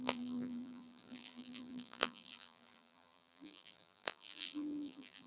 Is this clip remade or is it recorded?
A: remade